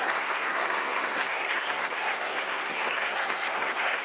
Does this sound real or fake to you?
fake